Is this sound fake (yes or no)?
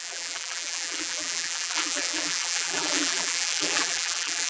yes